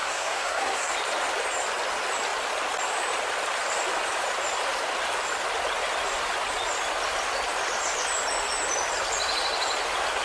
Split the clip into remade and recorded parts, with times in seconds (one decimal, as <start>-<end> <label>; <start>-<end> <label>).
0.0-0.9 remade; 0.9-10.2 recorded